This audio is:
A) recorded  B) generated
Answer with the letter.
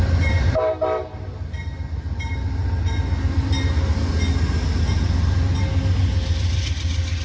A